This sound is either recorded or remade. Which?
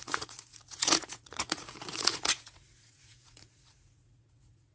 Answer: remade